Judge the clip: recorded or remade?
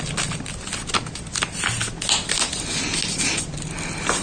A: recorded